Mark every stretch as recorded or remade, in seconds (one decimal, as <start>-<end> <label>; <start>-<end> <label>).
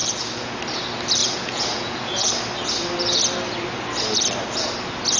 0.0-0.6 remade; 0.6-1.2 recorded; 1.2-2.3 remade; 2.3-5.2 recorded